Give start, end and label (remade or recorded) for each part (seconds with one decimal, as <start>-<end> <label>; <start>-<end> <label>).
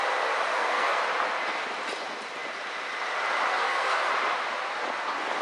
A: 0.0-0.5 recorded; 0.5-1.0 remade; 1.0-3.5 recorded; 3.5-4.1 remade; 4.1-5.4 recorded